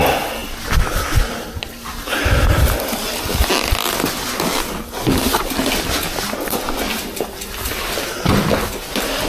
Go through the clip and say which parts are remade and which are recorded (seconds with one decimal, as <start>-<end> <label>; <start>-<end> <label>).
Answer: 0.0-9.3 recorded